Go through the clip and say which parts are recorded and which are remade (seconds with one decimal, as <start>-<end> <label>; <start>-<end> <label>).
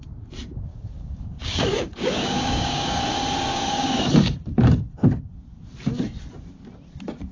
0.0-0.7 recorded; 0.7-3.0 remade; 3.0-3.5 recorded; 3.5-4.0 remade; 4.0-7.3 recorded